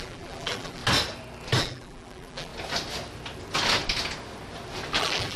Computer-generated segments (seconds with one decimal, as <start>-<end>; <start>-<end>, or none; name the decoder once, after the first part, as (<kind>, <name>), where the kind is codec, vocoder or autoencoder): 0.0-0.8 (vocoder, BigVGAN v2); 1.6-2.5; 5.0-5.4